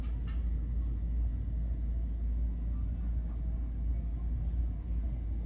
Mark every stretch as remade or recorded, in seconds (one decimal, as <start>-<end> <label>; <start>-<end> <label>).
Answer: 0.0-5.5 recorded